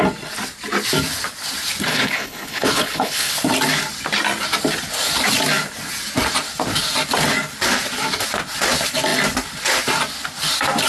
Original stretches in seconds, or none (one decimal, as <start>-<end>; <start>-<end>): 0.0-1.9; 3.3-10.9